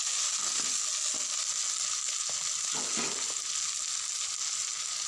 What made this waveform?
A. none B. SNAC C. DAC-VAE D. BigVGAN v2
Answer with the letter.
A